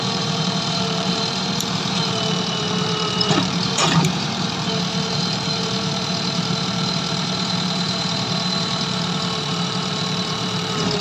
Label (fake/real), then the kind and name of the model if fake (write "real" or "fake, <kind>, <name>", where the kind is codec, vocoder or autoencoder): fake, vocoder, BigVGAN v2